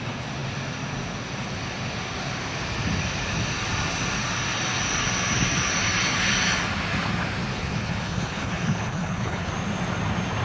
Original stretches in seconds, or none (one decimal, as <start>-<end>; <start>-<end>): 0.0-7.5; 9.5-10.4